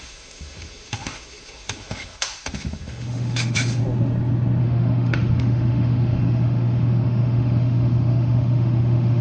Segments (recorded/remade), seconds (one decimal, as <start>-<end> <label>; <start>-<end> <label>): 0.0-3.8 remade; 3.8-4.6 recorded; 4.6-9.2 remade